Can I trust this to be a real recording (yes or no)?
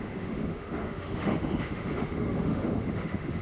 no